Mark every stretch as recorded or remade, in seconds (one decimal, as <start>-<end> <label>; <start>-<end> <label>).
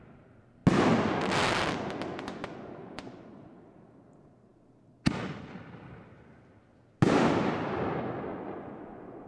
0.0-2.1 recorded; 2.1-3.6 remade; 3.6-8.3 recorded; 8.3-9.3 remade